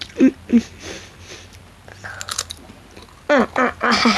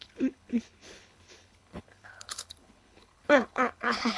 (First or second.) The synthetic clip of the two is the second